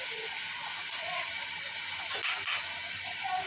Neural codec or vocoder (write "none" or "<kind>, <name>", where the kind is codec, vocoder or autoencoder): none